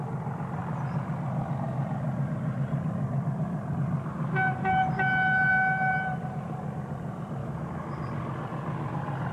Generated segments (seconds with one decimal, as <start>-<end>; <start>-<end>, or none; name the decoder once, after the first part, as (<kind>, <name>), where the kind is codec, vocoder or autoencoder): 7.4-8.0 (autoencoder, DAC-VAE)